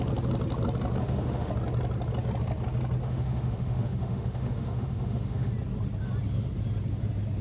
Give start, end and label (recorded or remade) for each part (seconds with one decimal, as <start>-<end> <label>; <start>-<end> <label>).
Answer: 0.0-1.0 recorded; 1.0-1.5 remade; 1.5-3.0 recorded; 3.0-5.5 remade; 5.5-7.4 recorded